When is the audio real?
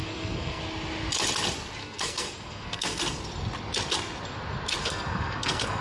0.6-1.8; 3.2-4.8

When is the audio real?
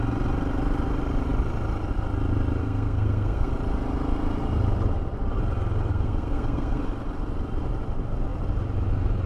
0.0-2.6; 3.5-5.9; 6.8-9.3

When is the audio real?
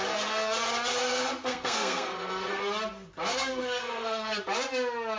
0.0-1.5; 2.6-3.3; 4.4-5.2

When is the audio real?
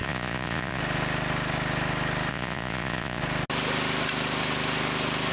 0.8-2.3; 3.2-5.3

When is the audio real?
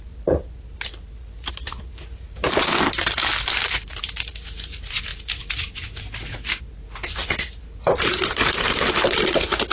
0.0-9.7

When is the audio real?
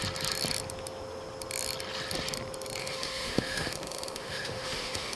0.0-2.8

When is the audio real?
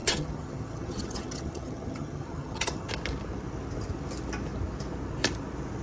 2.9-5.8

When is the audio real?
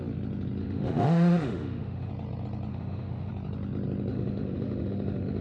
0.0-0.6; 2.1-2.7; 3.3-4.1